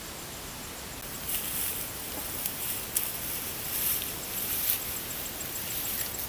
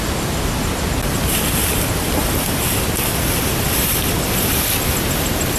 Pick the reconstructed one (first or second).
second